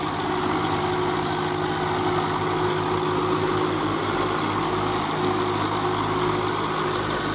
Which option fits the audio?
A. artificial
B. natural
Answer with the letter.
B